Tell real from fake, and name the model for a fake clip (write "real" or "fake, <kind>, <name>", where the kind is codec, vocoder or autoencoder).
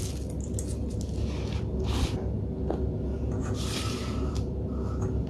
real